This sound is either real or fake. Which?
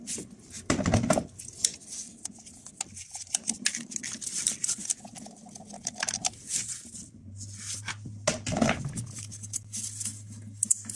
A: real